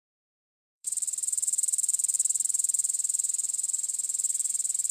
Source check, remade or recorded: remade